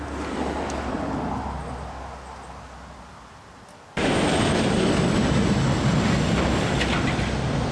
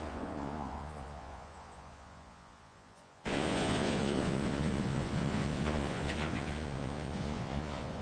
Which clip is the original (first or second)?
first